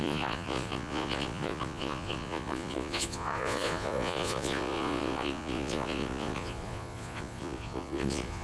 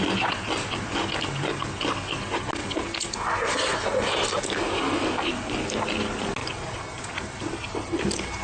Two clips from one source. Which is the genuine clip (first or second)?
second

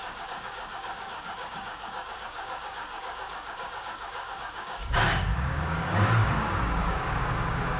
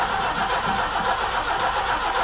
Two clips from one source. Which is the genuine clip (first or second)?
second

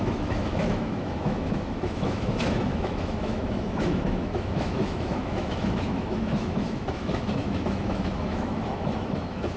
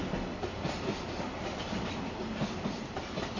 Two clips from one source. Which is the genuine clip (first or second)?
second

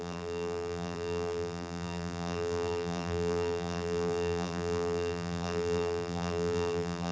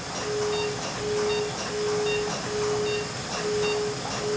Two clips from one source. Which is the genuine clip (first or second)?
second